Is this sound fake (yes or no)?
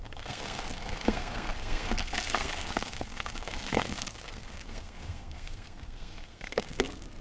yes